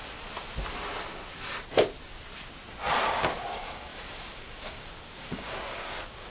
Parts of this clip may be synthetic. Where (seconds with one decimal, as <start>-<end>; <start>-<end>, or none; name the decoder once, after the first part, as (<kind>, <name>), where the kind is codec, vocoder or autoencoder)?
3.0-6.3 (codec, DAC)